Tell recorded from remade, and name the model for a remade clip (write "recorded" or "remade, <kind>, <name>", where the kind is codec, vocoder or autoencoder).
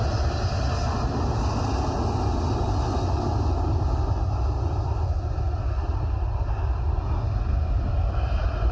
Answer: recorded